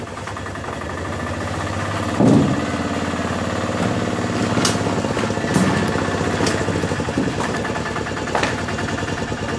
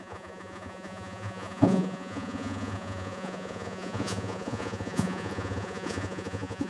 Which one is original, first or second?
first